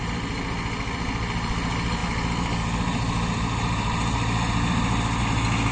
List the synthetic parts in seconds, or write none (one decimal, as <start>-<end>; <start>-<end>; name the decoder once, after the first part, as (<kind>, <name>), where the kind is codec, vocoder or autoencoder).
none